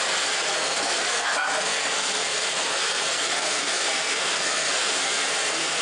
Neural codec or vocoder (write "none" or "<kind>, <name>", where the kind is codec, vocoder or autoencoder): codec, SNAC